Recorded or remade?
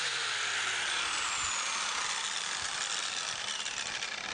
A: remade